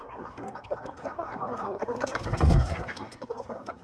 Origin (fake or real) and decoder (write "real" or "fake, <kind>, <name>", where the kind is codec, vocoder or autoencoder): fake, codec, SNAC